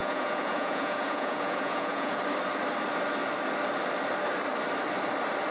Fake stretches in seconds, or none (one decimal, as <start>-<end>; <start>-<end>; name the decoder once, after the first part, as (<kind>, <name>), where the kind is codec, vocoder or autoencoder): 0.0-2.2 (vocoder, Vocos)

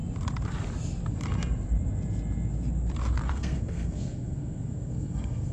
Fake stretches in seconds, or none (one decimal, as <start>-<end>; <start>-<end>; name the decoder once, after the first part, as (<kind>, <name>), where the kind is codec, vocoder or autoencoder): 3.3-5.5 (codec, SNAC)

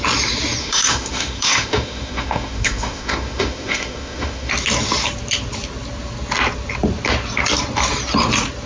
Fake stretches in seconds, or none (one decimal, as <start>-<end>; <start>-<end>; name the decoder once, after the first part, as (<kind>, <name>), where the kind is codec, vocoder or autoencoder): 0.6-4.5 (autoencoder, DAC-VAE)

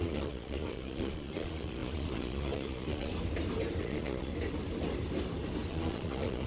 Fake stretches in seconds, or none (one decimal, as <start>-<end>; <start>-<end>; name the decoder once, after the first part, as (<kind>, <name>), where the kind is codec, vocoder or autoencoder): 0.0-3.1 (vocoder, Vocos); 3.8-4.3; 5.7-6.5

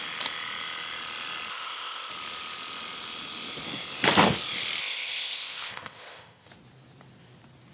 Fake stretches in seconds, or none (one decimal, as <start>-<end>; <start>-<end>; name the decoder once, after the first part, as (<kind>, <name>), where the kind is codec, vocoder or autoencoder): 1.5-2.1 (codec, ZipCodec); 4.8-6.5

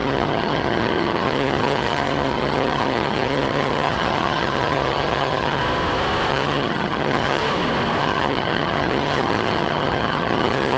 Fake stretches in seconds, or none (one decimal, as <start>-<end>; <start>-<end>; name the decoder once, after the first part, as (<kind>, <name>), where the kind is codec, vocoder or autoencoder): 0.0-5.6 (vocoder, HiFi-GAN); 6.3-7.4; 8.0-10.8

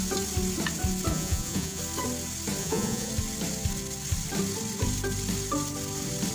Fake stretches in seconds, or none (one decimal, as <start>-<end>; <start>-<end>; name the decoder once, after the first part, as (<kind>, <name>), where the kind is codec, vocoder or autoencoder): 1.1-1.8 (vocoder, Vocos); 2.6-3.1

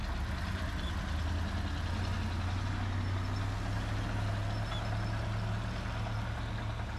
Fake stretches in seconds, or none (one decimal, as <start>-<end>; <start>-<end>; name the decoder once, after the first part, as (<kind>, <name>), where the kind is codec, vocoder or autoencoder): 0.0-1.0 (vocoder, BigVGAN v2)